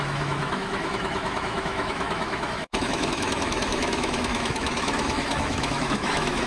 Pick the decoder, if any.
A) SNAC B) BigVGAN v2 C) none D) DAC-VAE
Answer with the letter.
D